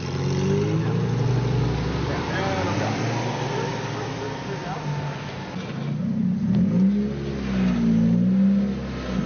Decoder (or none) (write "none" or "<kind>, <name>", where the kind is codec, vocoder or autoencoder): none